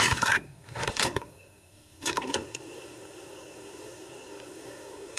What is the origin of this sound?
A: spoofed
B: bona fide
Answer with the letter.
A